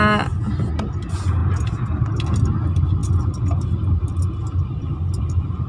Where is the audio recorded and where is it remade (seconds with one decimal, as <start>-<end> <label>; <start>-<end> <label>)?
0.0-5.7 recorded